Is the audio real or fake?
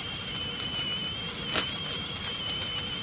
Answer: real